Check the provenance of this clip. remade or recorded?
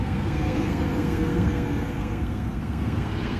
remade